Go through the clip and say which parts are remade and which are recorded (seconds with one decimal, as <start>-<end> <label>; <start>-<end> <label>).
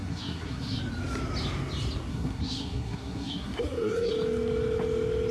0.0-0.8 remade; 0.8-2.1 recorded; 2.1-4.1 remade; 4.1-5.3 recorded